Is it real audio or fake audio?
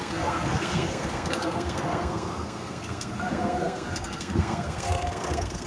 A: fake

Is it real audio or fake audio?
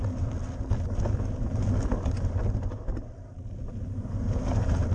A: real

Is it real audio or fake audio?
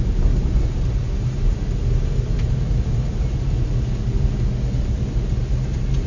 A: real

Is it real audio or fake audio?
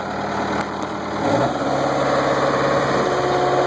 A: real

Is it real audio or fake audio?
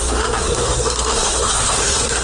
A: fake